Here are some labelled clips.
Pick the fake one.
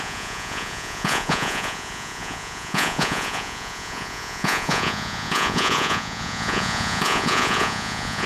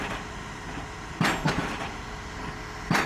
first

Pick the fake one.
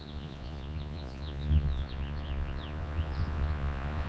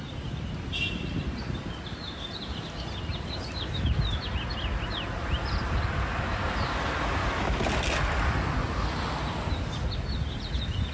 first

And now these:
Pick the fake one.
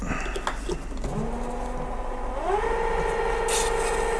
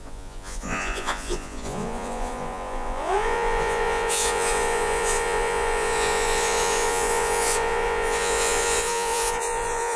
second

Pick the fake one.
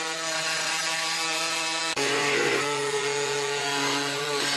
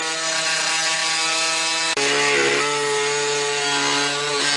first